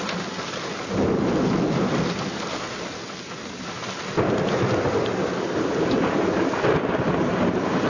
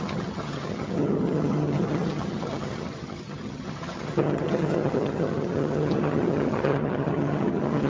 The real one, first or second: first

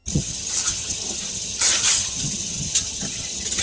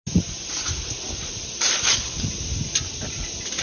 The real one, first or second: second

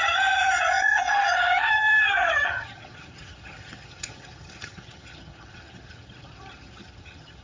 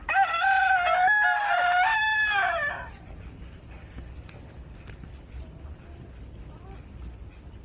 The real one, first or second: second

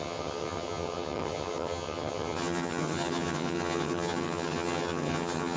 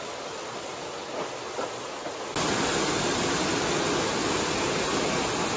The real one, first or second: second